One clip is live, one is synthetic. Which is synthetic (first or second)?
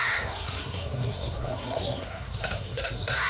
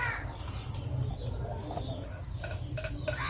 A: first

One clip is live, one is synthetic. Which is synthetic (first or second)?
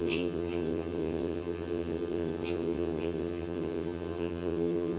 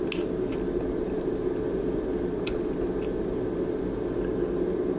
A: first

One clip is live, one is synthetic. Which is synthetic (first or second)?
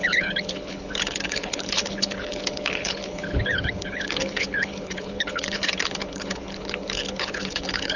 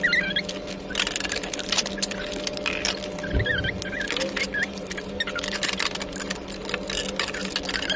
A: first